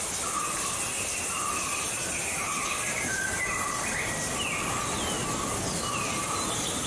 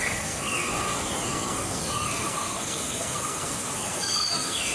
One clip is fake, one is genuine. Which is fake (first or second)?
second